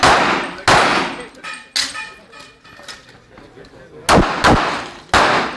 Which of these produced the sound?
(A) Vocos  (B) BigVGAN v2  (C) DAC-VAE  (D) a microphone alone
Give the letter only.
D